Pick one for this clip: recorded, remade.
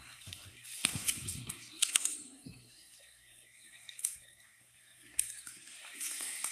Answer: remade